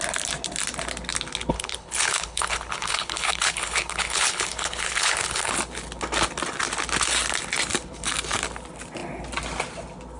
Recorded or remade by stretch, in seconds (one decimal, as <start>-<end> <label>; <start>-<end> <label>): 0.0-1.5 recorded; 1.5-5.5 remade; 5.5-10.2 recorded